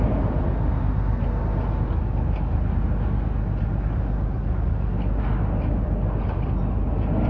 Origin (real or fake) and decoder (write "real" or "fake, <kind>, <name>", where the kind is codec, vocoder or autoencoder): real